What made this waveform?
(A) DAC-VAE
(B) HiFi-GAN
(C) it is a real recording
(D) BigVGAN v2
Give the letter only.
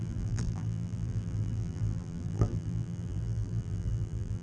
D